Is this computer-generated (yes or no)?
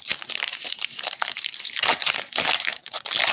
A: yes